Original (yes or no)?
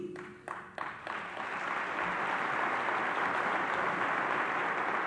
yes